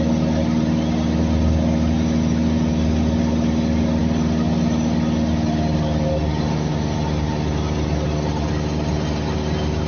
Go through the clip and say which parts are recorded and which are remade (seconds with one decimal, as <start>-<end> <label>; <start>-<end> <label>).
0.0-9.9 recorded